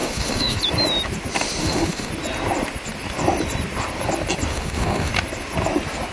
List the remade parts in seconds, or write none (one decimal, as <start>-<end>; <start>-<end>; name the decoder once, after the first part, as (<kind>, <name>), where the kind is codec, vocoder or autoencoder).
0.0-0.6 (autoencoder, DAC-VAE); 1.6-2.1; 4.5-5.1